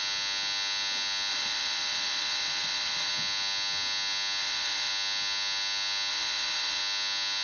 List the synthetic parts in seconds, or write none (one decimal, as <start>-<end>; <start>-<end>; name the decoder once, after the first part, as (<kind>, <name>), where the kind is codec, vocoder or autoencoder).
1.3-3.1 (vocoder, Vocos); 4.4-4.9; 6.1-6.8